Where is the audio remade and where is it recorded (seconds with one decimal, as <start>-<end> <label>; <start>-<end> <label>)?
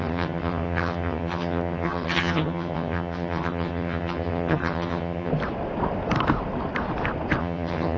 0.0-5.3 remade; 5.3-7.4 recorded; 7.4-8.0 remade